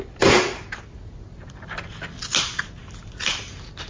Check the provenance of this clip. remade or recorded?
recorded